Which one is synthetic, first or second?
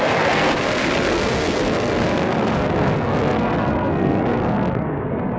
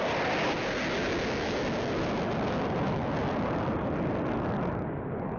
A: first